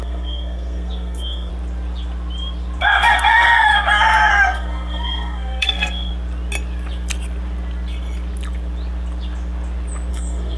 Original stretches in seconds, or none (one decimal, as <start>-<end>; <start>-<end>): 1.5-2.8; 3.7-4.3; 6.1-10.1